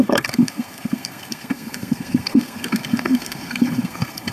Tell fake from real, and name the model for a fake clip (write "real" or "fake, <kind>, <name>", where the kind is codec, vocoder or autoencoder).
fake, codec, SNAC